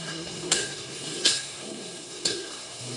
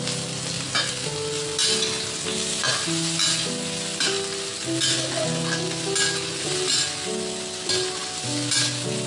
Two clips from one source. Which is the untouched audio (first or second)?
second